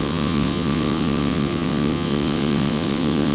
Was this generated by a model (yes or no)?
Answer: yes